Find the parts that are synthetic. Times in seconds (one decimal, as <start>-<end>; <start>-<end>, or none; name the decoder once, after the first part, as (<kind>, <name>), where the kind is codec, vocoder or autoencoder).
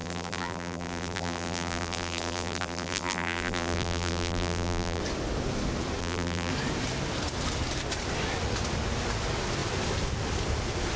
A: 0.0-5.0 (vocoder, BigVGAN v2); 6.0-6.5